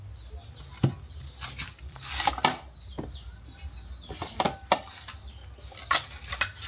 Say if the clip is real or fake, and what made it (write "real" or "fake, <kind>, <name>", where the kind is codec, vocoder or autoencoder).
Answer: real